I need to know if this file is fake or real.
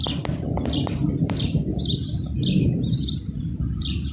real